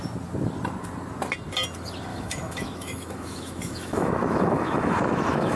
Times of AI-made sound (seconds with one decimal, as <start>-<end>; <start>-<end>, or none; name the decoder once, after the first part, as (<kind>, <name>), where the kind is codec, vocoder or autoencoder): 2.1-5.6 (autoencoder, DAC-VAE)